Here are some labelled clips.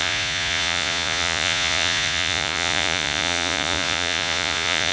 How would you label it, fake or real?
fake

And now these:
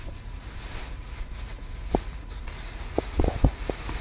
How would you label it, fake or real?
fake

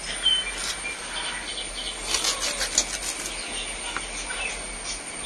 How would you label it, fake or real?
real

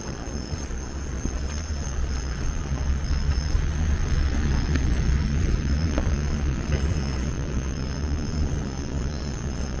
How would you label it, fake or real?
fake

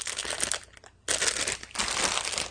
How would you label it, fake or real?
real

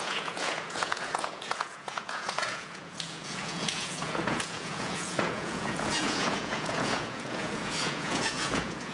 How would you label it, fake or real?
fake